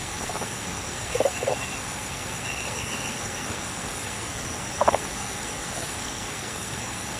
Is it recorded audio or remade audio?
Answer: remade